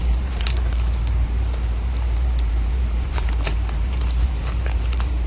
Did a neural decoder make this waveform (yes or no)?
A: yes